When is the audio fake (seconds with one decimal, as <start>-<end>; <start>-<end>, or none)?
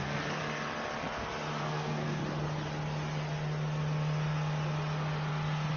0.0-0.4; 1.6-2.2